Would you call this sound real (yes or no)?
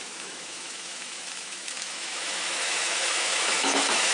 no